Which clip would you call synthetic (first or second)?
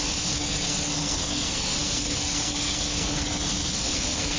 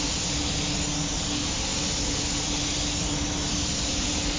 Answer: first